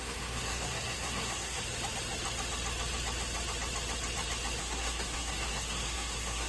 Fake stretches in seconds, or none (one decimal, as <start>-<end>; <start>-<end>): 0.0-1.6; 4.6-6.5